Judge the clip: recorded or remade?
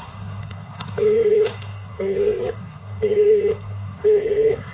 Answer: remade